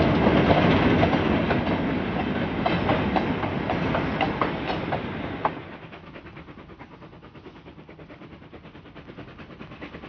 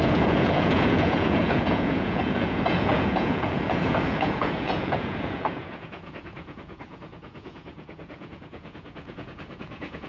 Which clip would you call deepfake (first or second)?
second